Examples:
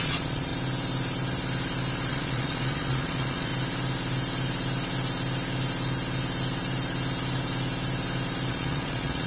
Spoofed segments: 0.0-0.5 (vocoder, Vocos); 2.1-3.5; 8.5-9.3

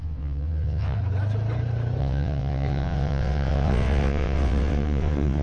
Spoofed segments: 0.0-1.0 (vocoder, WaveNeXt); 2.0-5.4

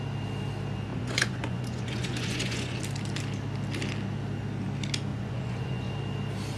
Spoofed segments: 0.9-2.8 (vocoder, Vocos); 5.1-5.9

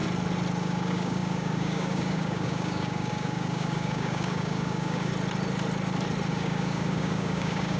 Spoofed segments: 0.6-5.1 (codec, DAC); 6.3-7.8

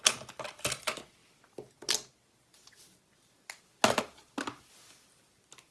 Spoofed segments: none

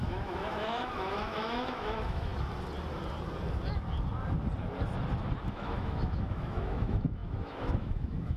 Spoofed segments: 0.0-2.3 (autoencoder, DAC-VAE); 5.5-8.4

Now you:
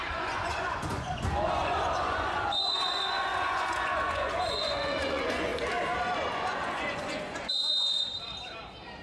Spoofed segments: 0.0-5.5 (vocoder, Vocos); 6.3-8.1